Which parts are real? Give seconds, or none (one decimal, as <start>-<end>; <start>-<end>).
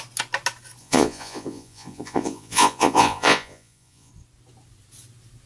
0.0-0.8; 4.1-5.5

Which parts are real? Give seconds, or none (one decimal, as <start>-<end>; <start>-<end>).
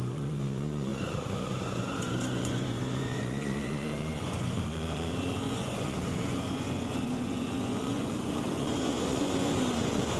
none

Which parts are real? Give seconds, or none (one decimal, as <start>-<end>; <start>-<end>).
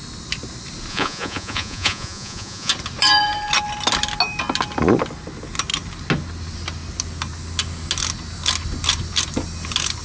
0.0-0.9; 2.7-10.0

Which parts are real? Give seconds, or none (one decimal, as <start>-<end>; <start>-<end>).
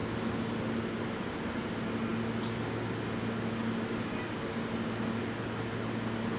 0.0-6.4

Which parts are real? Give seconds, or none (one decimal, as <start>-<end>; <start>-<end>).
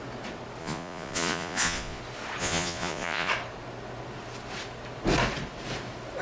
0.0-0.6; 2.0-2.4; 3.3-6.2